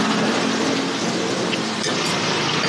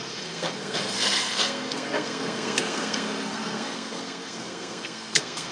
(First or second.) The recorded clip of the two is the first